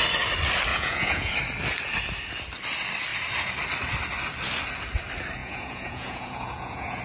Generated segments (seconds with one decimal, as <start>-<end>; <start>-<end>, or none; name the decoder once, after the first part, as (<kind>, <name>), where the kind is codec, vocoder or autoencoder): 0.7-1.3 (vocoder, Vocos); 5.4-7.0